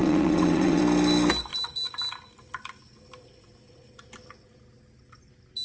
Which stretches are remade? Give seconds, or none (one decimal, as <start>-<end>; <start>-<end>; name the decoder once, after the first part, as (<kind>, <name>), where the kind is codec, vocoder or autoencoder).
0.0-0.8 (vocoder, WaveNeXt)